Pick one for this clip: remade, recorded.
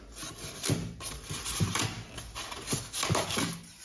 recorded